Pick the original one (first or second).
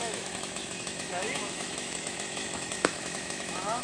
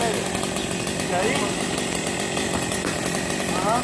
second